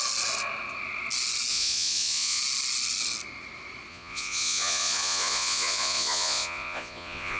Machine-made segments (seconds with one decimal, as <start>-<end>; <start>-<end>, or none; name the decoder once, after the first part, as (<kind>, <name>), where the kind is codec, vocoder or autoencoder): 1.5-2.4 (vocoder, Vocos); 3.9-7.4